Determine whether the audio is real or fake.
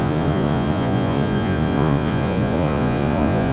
fake